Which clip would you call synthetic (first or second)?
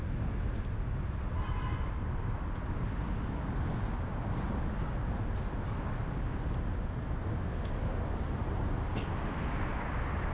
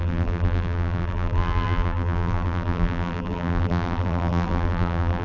second